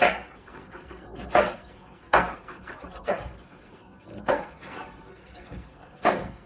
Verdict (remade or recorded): remade